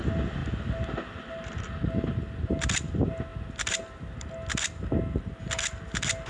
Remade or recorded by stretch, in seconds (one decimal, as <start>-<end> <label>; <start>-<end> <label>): 0.0-6.3 recorded